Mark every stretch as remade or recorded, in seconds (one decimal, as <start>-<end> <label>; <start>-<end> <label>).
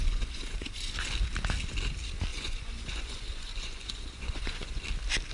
0.0-0.9 remade; 0.9-2.3 recorded; 2.3-4.8 remade; 4.8-5.3 recorded